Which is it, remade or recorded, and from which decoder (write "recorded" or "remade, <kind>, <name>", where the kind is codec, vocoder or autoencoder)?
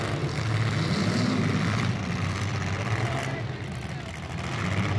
recorded